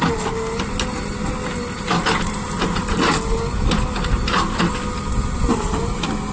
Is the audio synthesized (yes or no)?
no